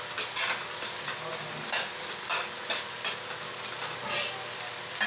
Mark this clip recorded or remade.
recorded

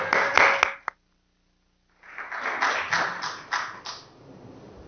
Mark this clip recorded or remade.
recorded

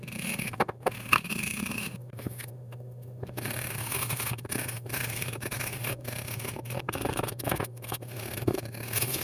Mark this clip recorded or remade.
remade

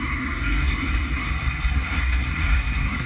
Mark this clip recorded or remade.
remade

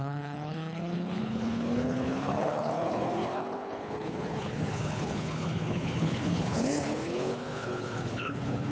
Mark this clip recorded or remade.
remade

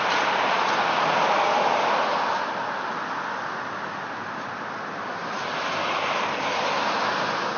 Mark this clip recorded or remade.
recorded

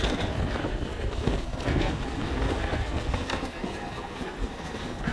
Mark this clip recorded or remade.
remade